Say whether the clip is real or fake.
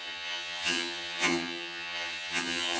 fake